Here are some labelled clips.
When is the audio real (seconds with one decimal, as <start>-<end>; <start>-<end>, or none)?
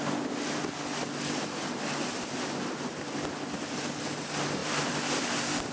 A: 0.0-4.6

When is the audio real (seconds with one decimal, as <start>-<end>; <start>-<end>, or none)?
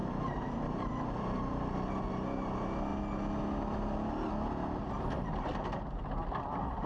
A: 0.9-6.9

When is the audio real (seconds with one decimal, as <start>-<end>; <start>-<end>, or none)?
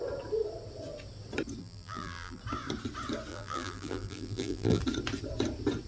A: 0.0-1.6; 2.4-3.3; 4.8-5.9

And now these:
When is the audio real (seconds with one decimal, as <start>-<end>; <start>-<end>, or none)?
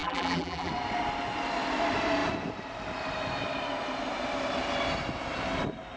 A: 0.7-6.0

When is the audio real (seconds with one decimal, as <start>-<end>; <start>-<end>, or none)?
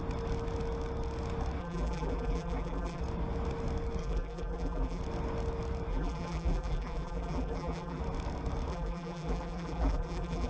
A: 0.0-1.6; 3.0-4.0; 5.0-5.9; 8.0-8.7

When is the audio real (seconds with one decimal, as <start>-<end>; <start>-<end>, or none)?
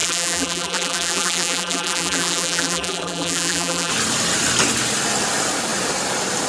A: 3.9-6.5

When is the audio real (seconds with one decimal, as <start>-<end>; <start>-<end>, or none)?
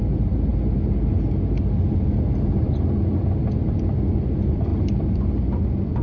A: 0.5-4.1; 4.7-5.6